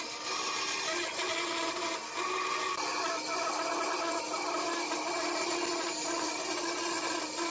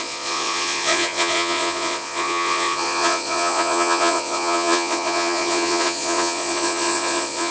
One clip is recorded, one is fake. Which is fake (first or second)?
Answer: second